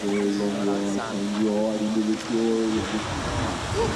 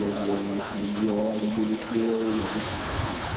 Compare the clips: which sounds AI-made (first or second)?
second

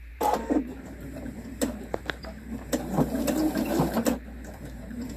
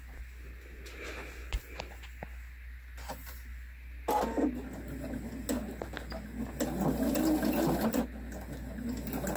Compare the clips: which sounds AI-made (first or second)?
first